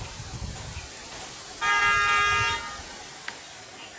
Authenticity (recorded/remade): recorded